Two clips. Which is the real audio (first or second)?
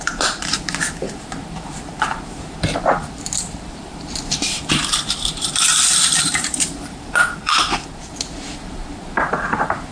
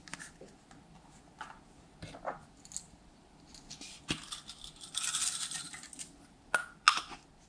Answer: second